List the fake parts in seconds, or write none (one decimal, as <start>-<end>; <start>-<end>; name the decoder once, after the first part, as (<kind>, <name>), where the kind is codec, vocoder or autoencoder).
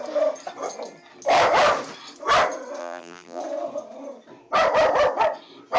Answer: 2.8-3.4 (vocoder, BigVGAN v2)